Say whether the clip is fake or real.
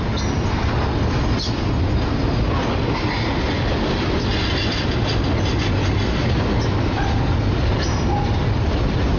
real